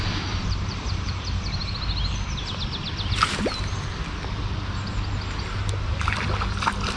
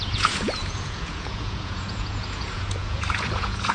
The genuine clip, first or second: first